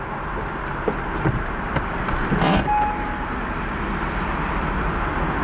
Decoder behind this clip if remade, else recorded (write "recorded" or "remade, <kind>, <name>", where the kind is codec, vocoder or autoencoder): recorded